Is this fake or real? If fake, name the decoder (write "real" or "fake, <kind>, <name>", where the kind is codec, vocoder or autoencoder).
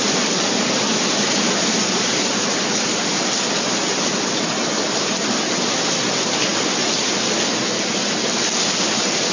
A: real